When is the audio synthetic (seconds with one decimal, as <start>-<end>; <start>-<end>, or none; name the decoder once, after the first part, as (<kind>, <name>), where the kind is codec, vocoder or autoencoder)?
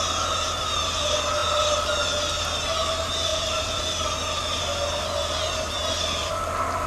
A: none